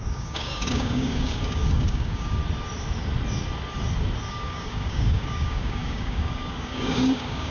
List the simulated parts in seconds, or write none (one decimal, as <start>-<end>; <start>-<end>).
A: 0.0-2.4; 4.3-7.5